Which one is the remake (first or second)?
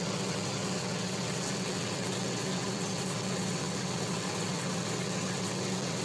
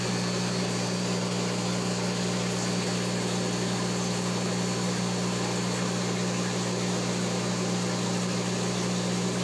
first